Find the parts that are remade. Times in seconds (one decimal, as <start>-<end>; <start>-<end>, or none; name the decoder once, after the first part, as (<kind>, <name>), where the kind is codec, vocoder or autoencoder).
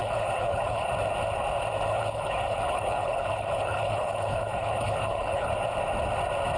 0.0-0.9 (codec, HILCodec); 1.9-5.5